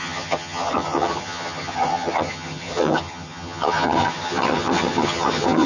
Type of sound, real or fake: fake